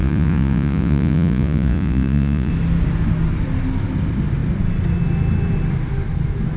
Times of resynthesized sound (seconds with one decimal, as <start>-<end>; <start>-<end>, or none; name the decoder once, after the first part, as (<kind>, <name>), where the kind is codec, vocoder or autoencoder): 0.0-2.5 (vocoder, Vocos)